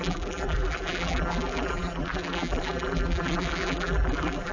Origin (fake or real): fake